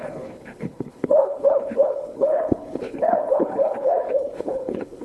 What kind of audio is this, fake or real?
fake